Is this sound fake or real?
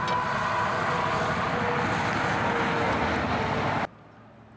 real